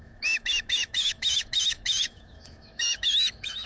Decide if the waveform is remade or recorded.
remade